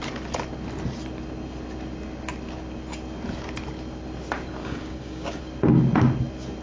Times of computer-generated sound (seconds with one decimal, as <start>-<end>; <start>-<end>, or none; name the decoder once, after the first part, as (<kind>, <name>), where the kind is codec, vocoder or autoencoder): 4.6-5.4 (codec, DAC)